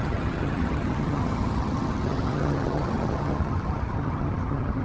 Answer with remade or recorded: remade